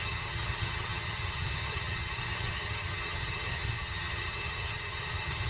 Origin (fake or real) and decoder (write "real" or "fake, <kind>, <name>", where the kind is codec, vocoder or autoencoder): fake, vocoder, HiFi-GAN